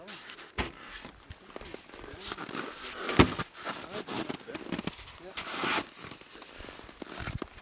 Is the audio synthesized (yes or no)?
yes